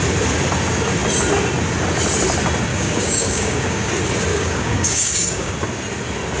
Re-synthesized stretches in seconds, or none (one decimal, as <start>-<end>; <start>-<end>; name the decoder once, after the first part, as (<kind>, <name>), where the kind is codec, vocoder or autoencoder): 2.7-3.9 (codec, DAC); 4.3-5.5